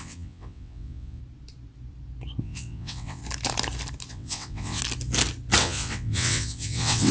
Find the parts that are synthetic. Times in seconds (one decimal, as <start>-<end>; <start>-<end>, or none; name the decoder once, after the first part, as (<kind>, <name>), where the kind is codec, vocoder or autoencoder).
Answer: 0.0-1.2 (vocoder, WaveNeXt); 2.4-3.2; 4.1-4.8; 5.6-7.1